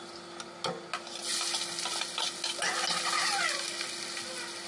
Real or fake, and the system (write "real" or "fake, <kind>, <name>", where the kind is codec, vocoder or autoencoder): real